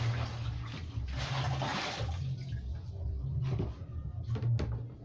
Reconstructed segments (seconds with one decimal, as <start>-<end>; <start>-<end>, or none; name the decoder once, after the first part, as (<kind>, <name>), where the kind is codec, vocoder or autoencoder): none

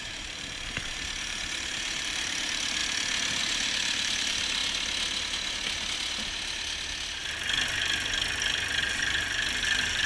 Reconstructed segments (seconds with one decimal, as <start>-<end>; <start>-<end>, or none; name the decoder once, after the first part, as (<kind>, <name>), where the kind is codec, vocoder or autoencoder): 0.0-2.8 (vocoder, BigVGAN v2); 3.4-4.6; 8.8-10.1